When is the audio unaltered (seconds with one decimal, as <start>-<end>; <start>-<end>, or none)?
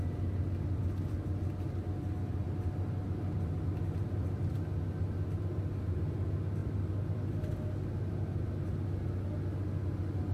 0.0-6.6; 7.5-10.3